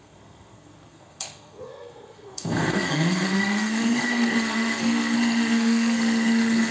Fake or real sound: fake